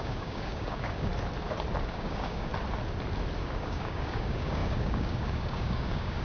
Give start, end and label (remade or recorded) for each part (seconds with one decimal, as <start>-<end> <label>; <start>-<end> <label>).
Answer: 0.0-1.1 remade; 1.1-1.9 recorded; 1.9-2.5 remade; 2.5-3.4 recorded; 3.4-6.2 remade